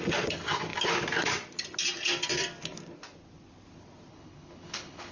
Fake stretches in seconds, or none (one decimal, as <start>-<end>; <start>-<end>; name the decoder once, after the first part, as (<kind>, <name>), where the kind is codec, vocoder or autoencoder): 4.1-5.1 (codec, HILCodec)